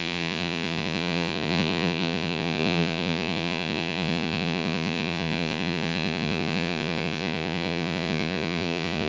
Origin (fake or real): fake